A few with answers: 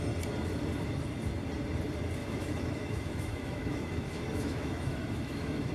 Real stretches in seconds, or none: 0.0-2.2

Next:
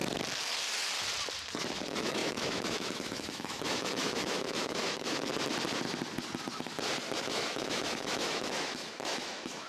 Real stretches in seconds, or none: 0.0-1.7; 5.3-7.2